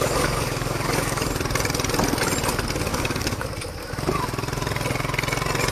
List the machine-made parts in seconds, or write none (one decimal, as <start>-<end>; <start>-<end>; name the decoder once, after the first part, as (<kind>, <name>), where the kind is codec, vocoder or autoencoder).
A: 0.0-1.3 (codec, DAC); 2.9-3.5

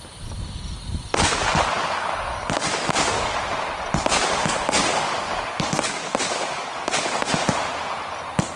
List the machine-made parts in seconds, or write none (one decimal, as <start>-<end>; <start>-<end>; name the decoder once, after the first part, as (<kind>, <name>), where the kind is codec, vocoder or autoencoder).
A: 1.8-3.4 (codec, DAC); 4.4-7.5

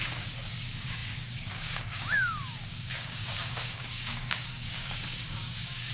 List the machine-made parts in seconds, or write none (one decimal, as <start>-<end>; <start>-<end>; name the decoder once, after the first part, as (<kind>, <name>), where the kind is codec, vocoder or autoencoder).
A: 0.0-5.9 (codec, DAC)

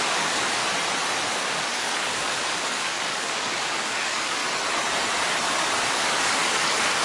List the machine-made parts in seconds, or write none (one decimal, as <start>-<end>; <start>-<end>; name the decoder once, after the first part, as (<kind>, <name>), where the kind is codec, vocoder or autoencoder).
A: 0.0-0.6 (codec, DAC); 1.3-4.4; 5.9-7.0

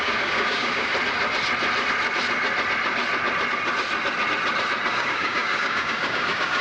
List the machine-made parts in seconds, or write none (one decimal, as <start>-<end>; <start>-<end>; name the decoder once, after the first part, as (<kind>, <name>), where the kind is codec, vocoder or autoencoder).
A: 0.0-0.9 (codec, DAC); 4.9-6.6